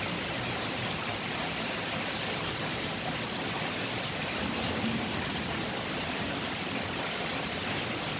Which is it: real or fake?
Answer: real